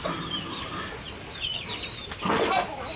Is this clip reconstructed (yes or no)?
no